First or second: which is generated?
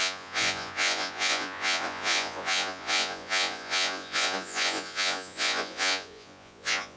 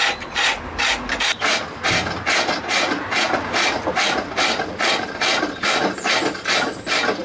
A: first